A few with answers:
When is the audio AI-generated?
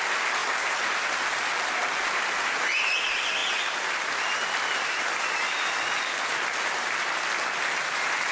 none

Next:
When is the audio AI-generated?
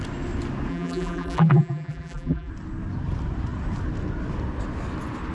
0.7-2.5 (vocoder, BigVGAN v2)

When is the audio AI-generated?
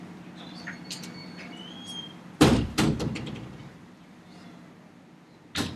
1.2-4.7 (vocoder, BigVGAN v2)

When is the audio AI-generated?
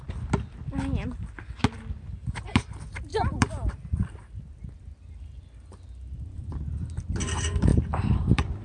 3.1-6.5 (vocoder, BigVGAN v2); 7.7-8.6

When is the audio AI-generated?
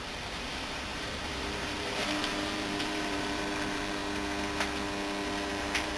0.0-4.0 (vocoder, BigVGAN v2); 5.5-6.0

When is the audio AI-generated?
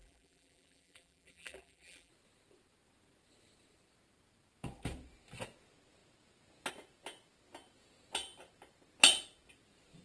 0.0-2.1 (vocoder, BigVGAN v2)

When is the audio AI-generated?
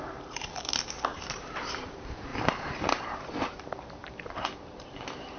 1.1-1.7 (vocoder, BigVGAN v2); 2.3-3.6; 4.0-5.4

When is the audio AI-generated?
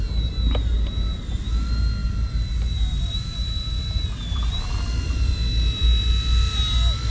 2.0-6.0 (vocoder, BigVGAN v2)